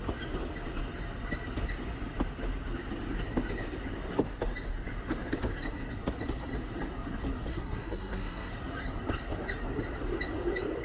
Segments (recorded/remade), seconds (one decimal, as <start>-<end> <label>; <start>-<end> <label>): 0.0-7.5 recorded; 7.5-8.5 remade; 8.5-10.8 recorded